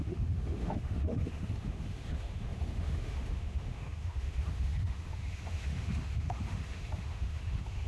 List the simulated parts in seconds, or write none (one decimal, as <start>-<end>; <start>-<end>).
0.0-7.9